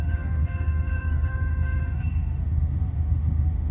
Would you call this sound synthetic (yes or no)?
yes